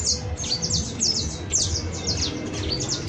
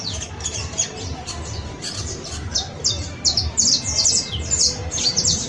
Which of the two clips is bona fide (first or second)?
first